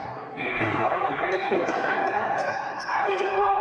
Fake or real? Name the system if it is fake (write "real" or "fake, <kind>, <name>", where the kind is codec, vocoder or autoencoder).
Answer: fake, codec, SNAC